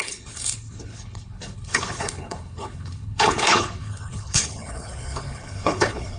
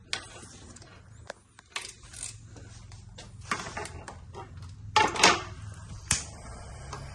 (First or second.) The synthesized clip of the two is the first